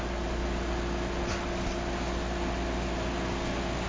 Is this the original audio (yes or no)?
yes